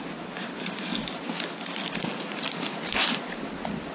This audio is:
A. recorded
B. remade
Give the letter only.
A